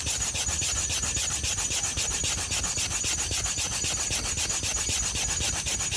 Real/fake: real